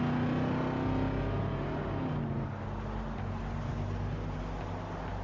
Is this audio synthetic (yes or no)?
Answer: no